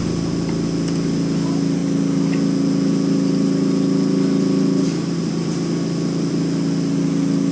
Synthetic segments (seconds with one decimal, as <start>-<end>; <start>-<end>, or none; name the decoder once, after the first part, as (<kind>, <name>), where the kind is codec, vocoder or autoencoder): none